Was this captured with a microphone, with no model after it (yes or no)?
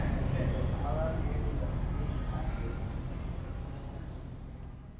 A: yes